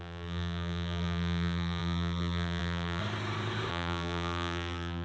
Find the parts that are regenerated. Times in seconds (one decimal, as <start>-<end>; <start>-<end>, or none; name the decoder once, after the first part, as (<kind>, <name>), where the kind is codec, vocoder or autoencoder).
0.0-3.0 (vocoder, BigVGAN v2); 3.7-5.0